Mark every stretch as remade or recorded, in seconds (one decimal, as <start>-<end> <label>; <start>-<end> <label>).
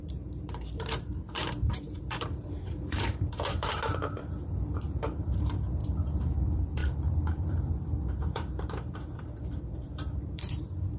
0.0-11.0 remade